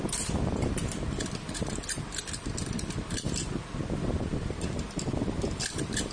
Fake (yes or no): no